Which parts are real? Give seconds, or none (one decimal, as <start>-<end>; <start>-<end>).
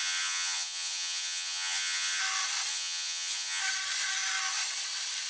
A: 2.2-2.7; 3.6-5.3